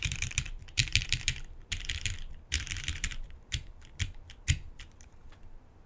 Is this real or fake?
fake